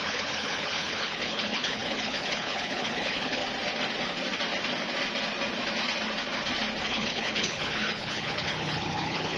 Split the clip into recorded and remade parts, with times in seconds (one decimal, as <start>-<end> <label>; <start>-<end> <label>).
0.0-3.4 remade; 3.4-6.8 recorded; 6.8-9.4 remade